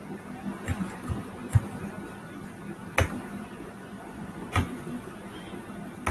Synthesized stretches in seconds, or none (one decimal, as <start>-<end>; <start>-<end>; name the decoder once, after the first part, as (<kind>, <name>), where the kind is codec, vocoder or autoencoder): 0.7-1.6 (vocoder, Vocos); 3.4-5.6